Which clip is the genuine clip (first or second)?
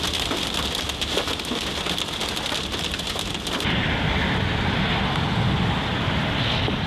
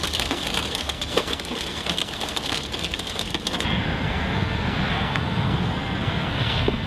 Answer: first